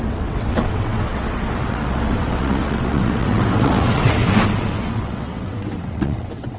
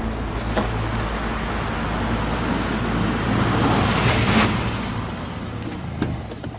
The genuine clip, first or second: second